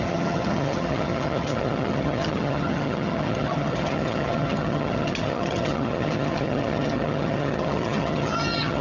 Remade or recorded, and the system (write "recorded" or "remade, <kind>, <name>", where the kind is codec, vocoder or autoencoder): remade, vocoder, HiFi-GAN